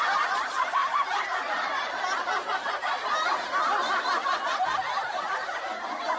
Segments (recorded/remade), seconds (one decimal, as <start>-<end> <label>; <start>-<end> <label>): 0.0-0.8 recorded; 0.8-1.9 remade; 1.9-6.2 recorded